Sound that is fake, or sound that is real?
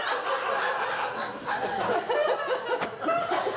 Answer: real